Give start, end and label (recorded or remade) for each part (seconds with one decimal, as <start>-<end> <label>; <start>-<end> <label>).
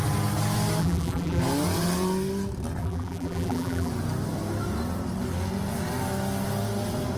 0.0-0.8 recorded; 0.8-1.4 remade; 1.4-2.8 recorded; 2.8-3.9 remade; 3.9-7.2 recorded